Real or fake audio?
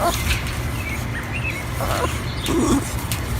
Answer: real